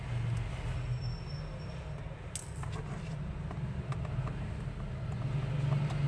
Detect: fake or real real